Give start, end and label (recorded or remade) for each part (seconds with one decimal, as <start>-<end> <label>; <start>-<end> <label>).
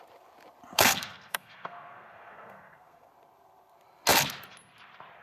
0.0-0.7 recorded; 0.7-3.1 remade; 3.1-5.2 recorded